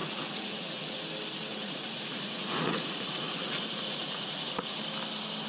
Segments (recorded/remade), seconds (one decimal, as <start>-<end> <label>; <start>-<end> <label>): 0.0-1.0 remade; 1.0-1.5 recorded; 1.5-4.8 remade; 4.8-5.5 recorded